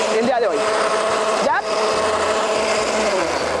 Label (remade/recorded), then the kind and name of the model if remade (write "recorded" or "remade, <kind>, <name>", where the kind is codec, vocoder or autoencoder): recorded